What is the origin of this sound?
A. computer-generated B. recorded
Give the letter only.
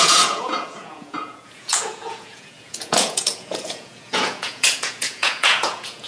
A